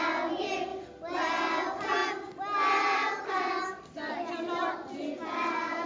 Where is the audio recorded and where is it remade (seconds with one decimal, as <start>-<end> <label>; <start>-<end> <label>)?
0.0-5.9 recorded